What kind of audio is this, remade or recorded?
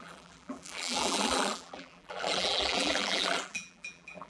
remade